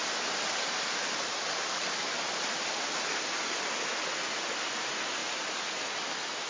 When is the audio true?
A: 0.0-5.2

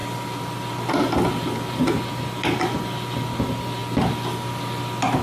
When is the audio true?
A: 0.0-5.2